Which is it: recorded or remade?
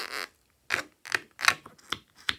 recorded